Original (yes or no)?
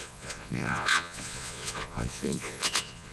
no